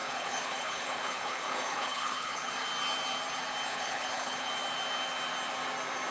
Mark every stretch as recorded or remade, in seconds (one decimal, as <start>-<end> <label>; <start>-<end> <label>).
0.0-2.5 remade; 2.5-3.7 recorded; 3.7-4.5 remade; 4.5-6.1 recorded